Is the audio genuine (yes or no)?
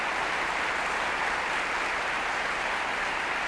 yes